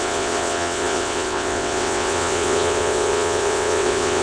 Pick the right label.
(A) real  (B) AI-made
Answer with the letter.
B